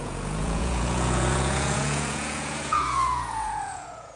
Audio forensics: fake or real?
fake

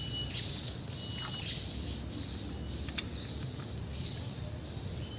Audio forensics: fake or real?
real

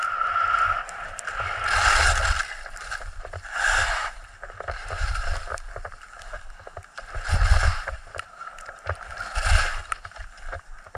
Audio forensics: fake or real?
real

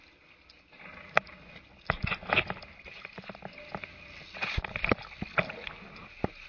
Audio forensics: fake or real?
real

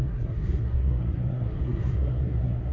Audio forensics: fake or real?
fake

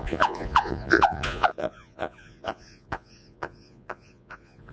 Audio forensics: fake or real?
fake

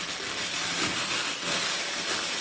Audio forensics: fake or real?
real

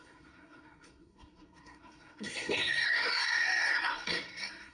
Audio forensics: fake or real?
fake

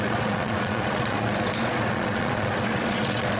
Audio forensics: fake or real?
fake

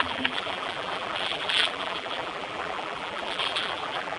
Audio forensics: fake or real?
fake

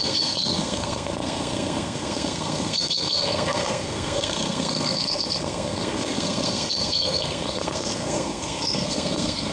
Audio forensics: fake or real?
fake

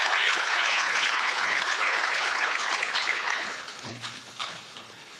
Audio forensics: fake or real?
fake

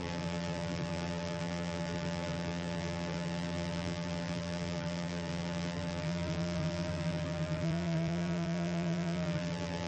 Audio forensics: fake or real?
fake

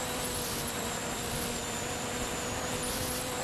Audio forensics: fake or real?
fake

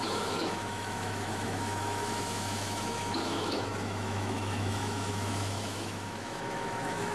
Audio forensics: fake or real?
fake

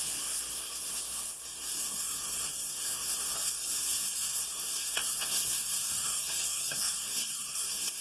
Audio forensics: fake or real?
fake